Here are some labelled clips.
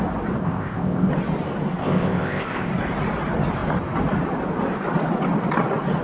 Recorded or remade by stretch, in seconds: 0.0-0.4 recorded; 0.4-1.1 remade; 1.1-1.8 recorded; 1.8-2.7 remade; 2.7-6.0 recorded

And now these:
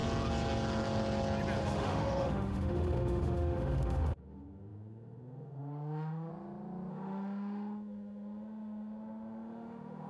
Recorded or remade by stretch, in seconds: 0.0-1.6 recorded; 1.6-6.3 remade; 6.3-6.9 recorded; 6.9-10.1 remade

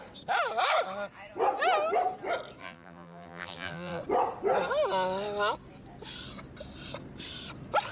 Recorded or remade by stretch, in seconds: 0.0-2.6 recorded; 2.6-4.0 remade; 4.0-7.9 recorded